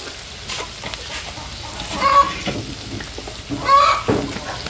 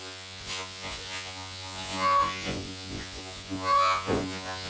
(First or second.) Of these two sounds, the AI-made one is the second